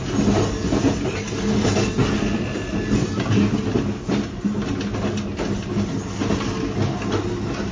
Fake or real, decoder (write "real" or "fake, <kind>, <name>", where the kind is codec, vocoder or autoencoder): real